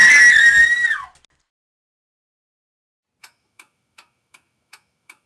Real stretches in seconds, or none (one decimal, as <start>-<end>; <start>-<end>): 0.0-3.2